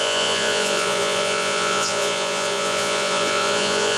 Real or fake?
fake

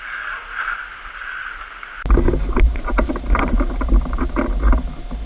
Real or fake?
real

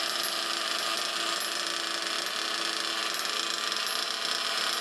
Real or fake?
real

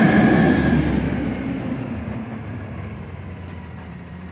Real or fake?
fake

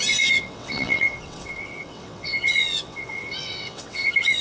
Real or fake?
fake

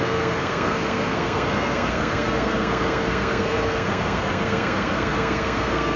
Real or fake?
fake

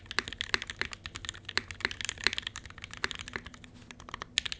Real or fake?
real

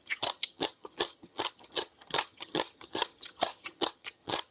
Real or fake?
fake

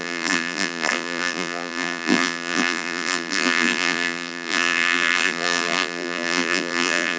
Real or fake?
fake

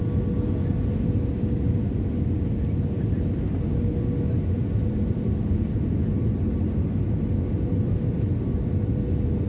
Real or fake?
real